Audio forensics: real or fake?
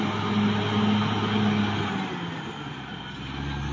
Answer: real